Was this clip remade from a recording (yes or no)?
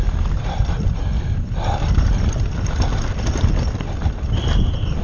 no